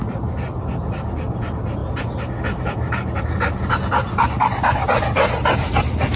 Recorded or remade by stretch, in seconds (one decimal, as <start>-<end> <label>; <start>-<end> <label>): 0.0-6.2 recorded